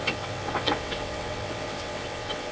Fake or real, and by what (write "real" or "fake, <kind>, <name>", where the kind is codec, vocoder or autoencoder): fake, vocoder, WaveNeXt